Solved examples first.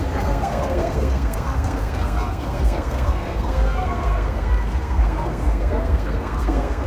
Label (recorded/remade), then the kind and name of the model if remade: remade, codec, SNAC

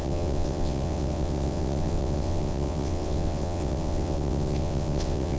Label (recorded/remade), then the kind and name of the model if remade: remade, vocoder, WaveNeXt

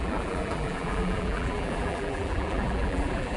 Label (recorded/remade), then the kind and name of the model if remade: remade, vocoder, BigVGAN v2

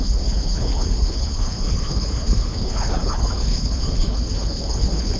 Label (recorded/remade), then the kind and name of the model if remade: remade, codec, HILCodec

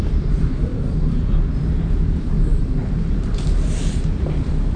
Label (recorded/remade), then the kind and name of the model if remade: remade, vocoder, BigVGAN v2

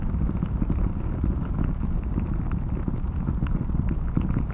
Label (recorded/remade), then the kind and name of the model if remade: recorded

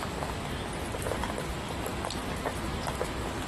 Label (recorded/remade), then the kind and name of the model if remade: recorded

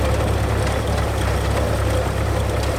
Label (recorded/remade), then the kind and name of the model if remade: recorded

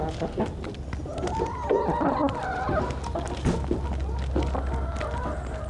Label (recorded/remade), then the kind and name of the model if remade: recorded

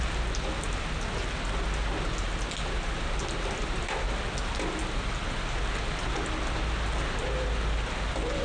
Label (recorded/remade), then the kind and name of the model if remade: recorded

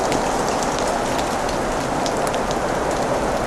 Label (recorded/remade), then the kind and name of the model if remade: recorded